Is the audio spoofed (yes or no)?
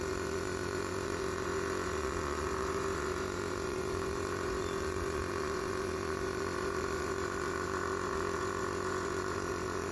yes